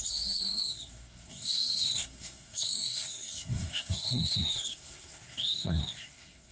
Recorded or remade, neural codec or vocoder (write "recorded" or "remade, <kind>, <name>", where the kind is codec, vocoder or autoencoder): remade, codec, SNAC